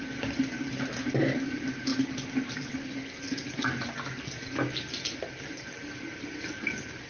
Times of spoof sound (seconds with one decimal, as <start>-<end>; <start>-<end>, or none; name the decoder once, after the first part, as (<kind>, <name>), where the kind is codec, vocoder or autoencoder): none